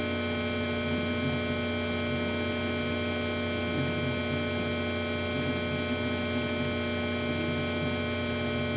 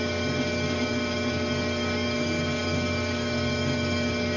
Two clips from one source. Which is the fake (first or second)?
second